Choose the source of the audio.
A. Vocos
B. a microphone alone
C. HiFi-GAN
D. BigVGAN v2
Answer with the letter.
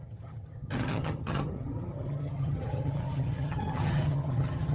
C